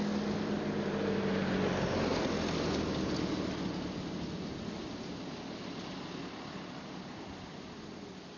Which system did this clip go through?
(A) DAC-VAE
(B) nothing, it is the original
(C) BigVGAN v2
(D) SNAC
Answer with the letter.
B